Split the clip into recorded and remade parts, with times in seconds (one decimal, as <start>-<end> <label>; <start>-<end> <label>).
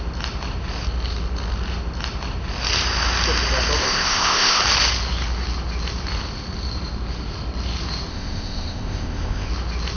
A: 0.0-3.8 recorded; 3.8-4.6 remade; 4.6-8.1 recorded; 8.1-9.5 remade; 9.5-10.0 recorded